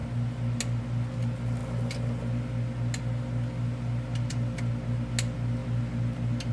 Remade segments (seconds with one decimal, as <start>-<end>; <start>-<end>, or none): none

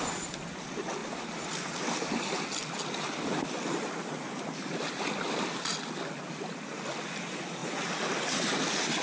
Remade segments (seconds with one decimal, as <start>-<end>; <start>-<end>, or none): none